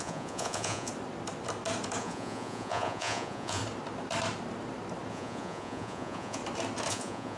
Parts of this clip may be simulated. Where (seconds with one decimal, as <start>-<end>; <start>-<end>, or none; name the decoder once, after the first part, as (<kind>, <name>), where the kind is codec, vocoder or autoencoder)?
0.0-0.9 (vocoder, Vocos); 2.0-3.6; 5.1-6.4; 6.9-7.4